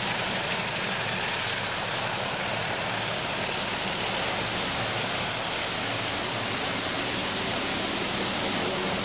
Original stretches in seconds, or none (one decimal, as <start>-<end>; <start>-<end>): 2.4-6.9